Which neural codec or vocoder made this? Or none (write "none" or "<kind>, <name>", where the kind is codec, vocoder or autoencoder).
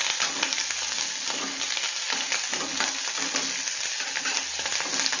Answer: none